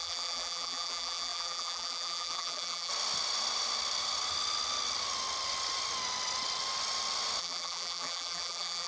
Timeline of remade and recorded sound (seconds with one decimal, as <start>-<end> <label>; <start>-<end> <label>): 0.0-2.9 remade; 2.9-7.4 recorded; 7.4-8.9 remade